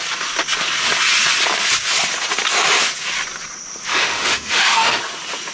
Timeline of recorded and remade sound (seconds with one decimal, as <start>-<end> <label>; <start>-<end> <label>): 0.0-3.9 recorded; 3.9-5.0 remade; 5.0-5.5 recorded